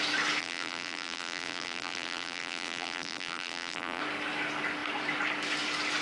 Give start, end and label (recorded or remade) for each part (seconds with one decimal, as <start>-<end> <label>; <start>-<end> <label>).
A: 0.0-0.4 recorded; 0.4-4.0 remade; 4.0-6.0 recorded